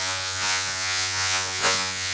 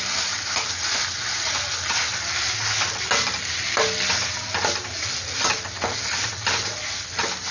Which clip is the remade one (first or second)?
first